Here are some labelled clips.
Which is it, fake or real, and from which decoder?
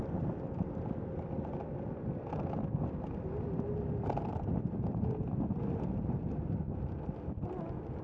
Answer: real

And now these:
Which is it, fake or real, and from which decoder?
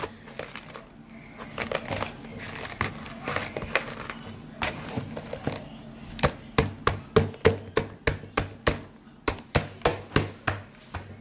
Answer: real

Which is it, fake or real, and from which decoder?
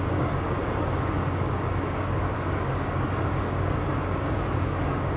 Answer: fake, codec, DAC